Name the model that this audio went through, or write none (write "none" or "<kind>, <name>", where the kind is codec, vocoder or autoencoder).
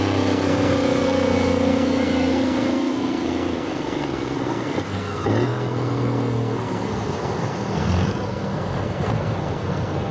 codec, SNAC